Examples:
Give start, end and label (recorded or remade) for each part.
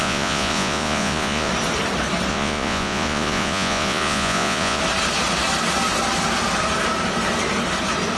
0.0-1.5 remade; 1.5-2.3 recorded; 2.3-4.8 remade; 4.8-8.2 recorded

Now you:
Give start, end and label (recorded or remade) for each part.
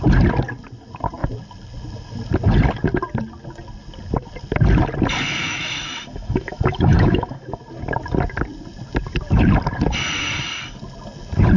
0.0-5.4 recorded; 5.4-7.6 remade; 7.6-11.6 recorded